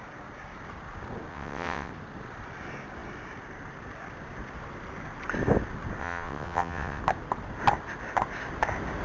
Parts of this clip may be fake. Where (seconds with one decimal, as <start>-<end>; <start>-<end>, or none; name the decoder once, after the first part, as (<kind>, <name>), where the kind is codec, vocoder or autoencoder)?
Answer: 1.3-1.9 (vocoder, WaveNeXt); 6.0-7.0